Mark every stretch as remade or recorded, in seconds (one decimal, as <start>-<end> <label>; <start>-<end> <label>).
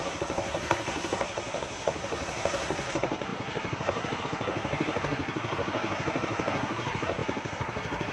0.0-8.1 remade